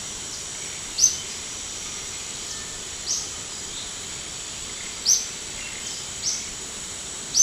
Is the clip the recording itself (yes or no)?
no